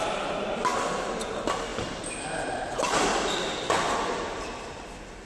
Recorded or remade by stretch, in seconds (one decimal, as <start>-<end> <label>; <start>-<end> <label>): 0.0-5.3 recorded